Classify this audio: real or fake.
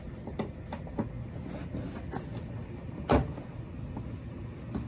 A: real